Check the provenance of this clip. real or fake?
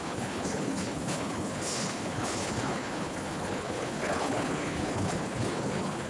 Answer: fake